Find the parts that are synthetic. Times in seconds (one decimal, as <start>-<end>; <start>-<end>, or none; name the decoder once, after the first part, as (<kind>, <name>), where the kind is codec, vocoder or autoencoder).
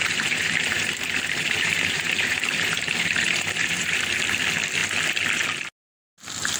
0.0-4.0 (vocoder, BigVGAN v2)